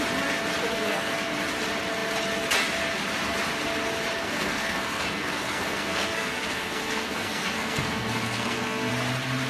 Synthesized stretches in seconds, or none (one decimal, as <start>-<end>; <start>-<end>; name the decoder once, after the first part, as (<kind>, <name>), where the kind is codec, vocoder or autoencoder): 0.7-1.3 (codec, SNAC); 4.2-8.9